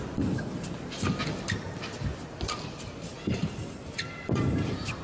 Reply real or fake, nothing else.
real